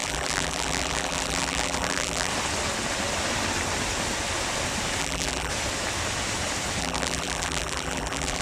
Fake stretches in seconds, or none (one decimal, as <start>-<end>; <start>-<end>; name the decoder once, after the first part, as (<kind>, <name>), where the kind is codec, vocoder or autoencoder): 0.0-2.3 (vocoder, BigVGAN v2); 5.0-5.5; 6.8-8.4